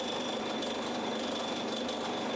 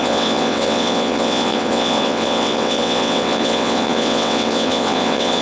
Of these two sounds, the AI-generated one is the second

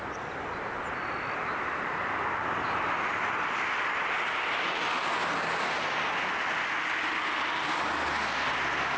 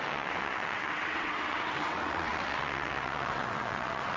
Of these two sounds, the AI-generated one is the second